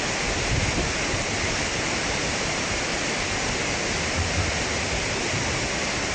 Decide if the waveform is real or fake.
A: real